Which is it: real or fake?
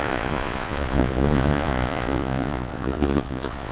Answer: fake